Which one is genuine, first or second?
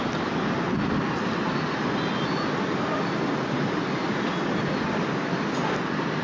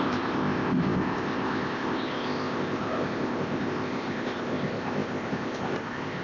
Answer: first